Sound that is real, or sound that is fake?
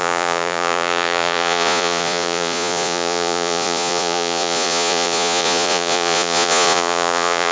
fake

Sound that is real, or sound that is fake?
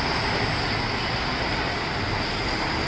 real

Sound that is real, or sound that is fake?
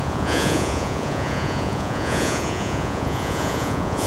fake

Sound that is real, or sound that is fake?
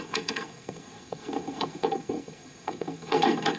fake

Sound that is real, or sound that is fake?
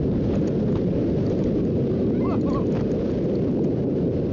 real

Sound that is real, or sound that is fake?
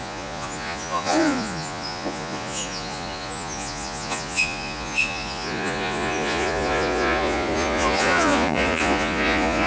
fake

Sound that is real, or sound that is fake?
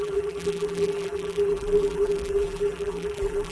fake